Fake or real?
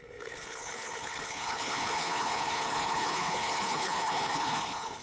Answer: fake